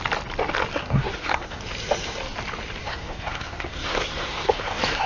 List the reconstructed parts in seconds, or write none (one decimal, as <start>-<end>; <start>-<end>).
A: 0.7-1.6; 2.8-5.1